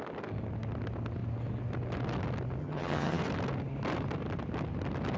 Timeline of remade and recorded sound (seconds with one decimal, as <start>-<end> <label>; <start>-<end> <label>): 0.0-2.6 recorded; 2.6-3.2 remade; 3.2-5.2 recorded